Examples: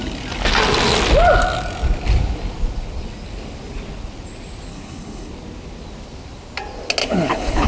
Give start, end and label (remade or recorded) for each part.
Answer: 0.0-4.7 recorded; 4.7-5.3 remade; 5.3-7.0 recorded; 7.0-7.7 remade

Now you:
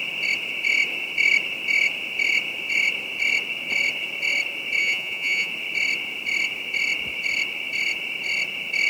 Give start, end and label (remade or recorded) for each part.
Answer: 0.0-4.8 recorded; 4.8-5.5 remade; 5.5-8.9 recorded